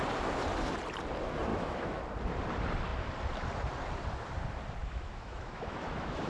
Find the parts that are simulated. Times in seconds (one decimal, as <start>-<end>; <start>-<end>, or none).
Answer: 1.5-2.0; 4.8-6.3